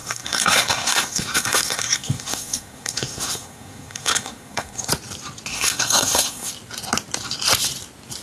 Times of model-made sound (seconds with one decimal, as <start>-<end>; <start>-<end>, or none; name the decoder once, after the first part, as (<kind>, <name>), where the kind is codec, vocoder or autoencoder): 0.0-4.9 (codec, SNAC); 5.5-6.5